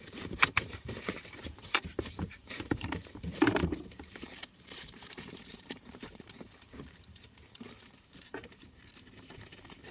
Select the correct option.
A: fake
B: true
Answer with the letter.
A